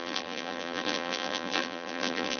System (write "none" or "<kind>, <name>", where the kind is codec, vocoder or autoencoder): vocoder, BigVGAN v2